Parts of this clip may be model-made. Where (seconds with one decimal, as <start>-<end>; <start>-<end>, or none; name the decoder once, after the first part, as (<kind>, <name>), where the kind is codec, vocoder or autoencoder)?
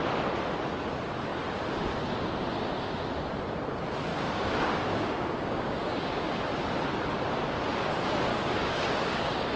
4.1-6.3 (codec, DAC); 8.3-9.6